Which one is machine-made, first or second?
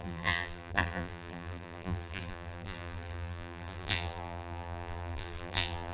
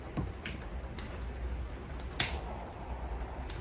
first